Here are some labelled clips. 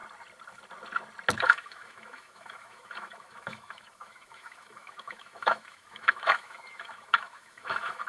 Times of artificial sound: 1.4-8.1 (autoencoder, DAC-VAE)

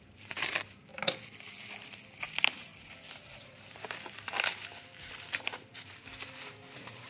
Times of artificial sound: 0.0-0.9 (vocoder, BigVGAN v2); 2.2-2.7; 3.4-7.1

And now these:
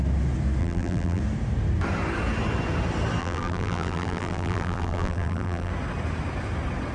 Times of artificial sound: 0.6-1.2 (vocoder, BigVGAN v2); 3.2-5.7